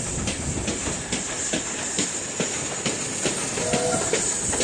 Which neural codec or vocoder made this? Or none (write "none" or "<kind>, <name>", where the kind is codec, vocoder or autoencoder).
none